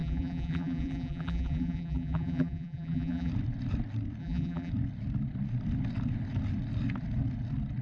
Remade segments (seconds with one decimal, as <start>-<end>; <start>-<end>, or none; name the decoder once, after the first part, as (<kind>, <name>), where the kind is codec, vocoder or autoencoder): 0.0-3.3 (vocoder, BigVGAN v2); 4.2-4.7